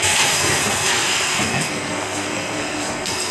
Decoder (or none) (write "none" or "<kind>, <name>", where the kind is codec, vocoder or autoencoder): codec, SNAC